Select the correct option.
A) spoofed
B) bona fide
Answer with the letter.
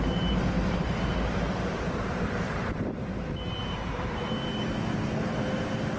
A